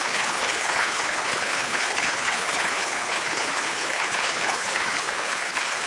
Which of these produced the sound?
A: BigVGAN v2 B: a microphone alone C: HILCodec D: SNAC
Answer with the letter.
C